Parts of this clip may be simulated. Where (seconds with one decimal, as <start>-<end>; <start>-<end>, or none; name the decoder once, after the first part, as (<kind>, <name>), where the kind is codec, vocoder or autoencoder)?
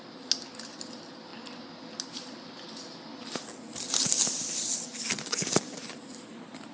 none